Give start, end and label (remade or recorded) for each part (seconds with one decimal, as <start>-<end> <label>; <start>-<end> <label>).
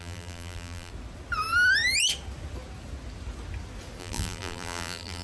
0.0-0.9 remade; 0.9-4.0 recorded; 4.0-5.2 remade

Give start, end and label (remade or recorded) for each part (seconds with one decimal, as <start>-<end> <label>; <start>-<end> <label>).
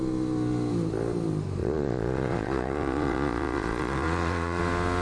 0.0-1.6 recorded; 1.6-4.6 remade; 4.6-5.0 recorded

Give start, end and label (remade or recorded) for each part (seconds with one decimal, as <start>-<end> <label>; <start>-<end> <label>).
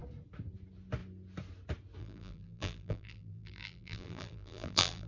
0.0-2.0 recorded; 2.0-5.1 remade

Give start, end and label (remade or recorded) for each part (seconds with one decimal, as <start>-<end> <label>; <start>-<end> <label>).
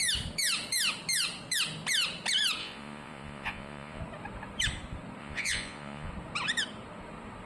0.0-2.6 recorded; 2.6-4.0 remade; 4.0-5.2 recorded; 5.2-6.1 remade; 6.1-7.5 recorded